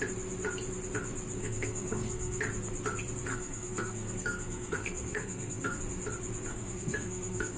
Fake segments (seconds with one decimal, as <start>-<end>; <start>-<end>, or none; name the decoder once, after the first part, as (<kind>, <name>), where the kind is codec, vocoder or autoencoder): 1.4-2.4 (codec, SNAC); 3.3-5.8; 6.5-7.6